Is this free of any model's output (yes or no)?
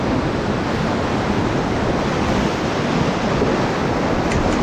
yes